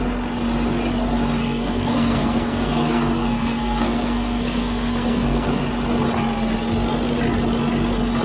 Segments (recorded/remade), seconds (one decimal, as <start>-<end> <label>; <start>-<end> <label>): 0.0-1.4 recorded; 1.4-5.6 remade; 5.6-8.2 recorded